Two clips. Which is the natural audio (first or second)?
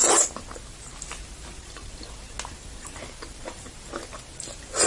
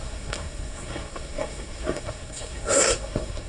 first